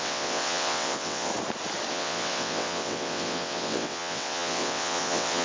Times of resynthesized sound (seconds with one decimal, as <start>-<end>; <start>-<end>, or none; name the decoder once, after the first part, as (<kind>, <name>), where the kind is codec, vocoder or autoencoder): 0.0-1.3 (vocoder, WaveNeXt); 1.9-5.4